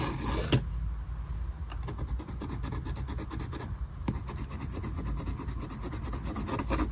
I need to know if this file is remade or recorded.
recorded